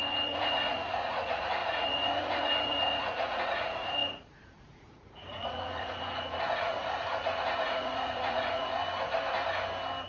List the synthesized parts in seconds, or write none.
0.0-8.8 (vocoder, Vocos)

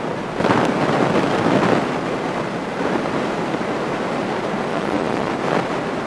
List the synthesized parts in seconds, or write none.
4.7-5.3 (vocoder, Vocos)

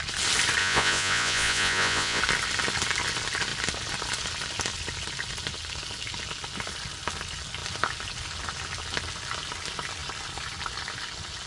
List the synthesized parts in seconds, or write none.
0.6-2.2 (vocoder, Vocos)

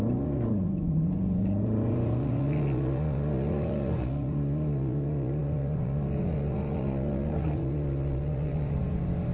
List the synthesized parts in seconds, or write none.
0.0-9.3 (vocoder, Vocos)

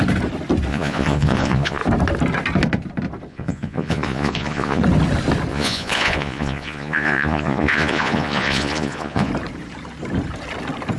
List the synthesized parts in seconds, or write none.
0.7-1.8 (vocoder, Vocos); 3.3-4.8; 5.5-9.3